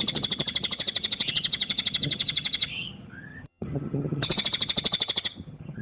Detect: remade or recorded remade